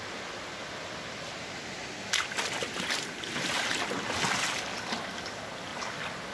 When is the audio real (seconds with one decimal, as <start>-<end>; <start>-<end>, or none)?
0.0-6.3